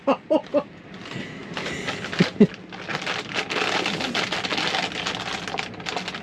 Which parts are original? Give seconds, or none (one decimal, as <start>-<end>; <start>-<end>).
0.0-6.2